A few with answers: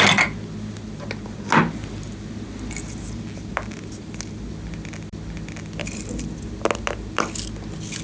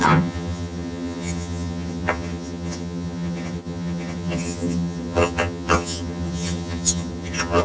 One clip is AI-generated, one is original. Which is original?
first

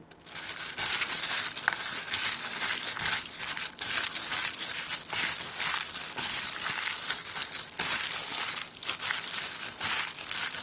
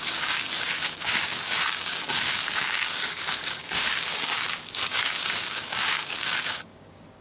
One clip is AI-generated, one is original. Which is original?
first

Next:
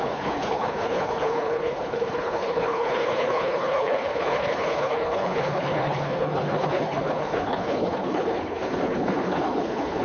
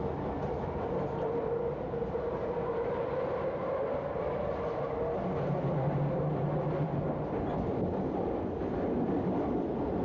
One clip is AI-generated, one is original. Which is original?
second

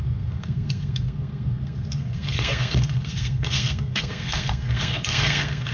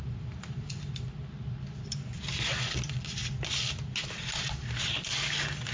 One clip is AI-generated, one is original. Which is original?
second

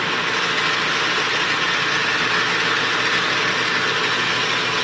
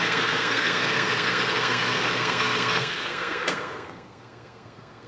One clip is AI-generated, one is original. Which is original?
first